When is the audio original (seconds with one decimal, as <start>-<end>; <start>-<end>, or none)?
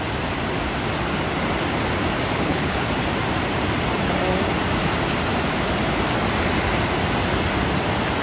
0.0-2.3; 2.9-8.2